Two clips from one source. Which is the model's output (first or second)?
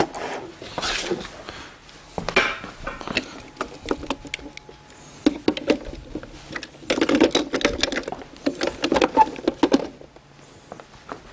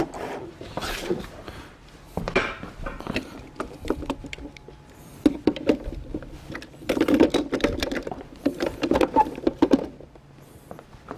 second